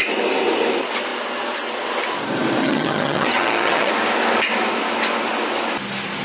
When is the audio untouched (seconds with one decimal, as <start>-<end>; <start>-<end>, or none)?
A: 0.0-2.6; 3.9-6.2